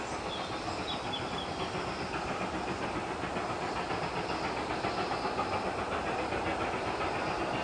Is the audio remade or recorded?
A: recorded